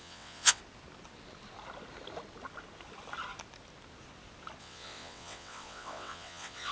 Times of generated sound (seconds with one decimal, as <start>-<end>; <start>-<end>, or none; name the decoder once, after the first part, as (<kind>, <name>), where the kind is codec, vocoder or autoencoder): 0.0-0.6 (vocoder, WaveNeXt); 4.6-6.7